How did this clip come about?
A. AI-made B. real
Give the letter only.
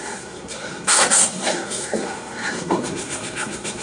A